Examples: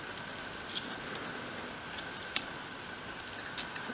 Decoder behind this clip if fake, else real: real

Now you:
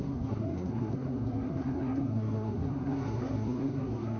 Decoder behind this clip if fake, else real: fake, codec, SNAC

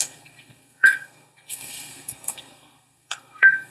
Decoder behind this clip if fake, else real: fake, codec, SNAC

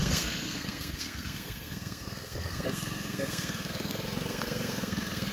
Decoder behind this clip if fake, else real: fake, codec, SNAC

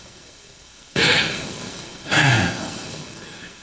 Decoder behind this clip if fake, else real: fake, codec, SNAC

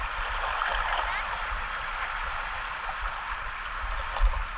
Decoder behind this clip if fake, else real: real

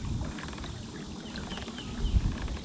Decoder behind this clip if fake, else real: real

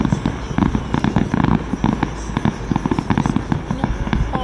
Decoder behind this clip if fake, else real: real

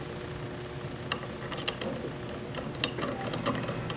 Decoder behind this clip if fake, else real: real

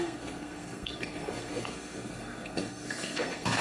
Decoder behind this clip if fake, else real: fake, codec, SNAC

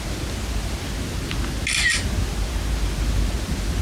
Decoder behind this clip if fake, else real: real